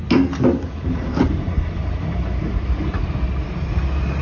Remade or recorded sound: recorded